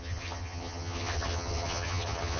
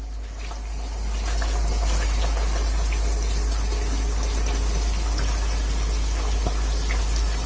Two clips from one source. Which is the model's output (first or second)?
first